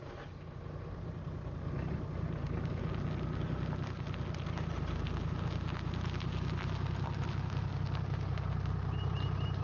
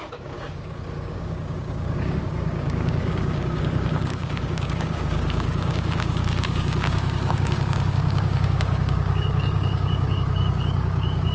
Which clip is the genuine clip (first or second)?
first